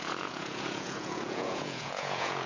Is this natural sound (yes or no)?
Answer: no